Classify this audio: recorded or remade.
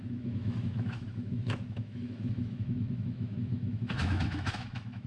remade